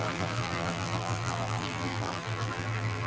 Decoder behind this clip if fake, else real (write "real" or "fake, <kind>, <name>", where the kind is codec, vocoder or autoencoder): fake, vocoder, BigVGAN v2